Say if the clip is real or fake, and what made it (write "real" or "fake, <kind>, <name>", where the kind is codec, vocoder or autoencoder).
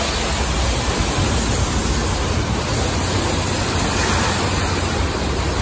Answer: real